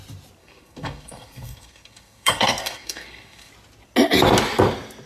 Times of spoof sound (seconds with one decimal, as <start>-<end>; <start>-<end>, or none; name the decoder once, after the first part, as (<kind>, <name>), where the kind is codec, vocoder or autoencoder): 0.4-3.5 (codec, SNAC)